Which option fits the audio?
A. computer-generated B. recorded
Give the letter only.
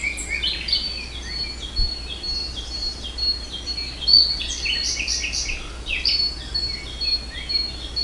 B